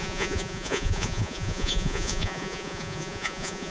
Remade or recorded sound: remade